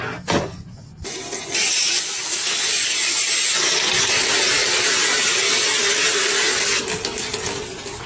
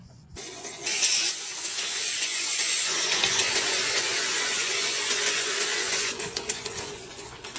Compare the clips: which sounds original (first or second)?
first